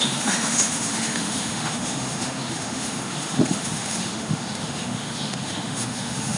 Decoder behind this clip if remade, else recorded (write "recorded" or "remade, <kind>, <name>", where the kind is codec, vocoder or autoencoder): remade, autoencoder, DAC-VAE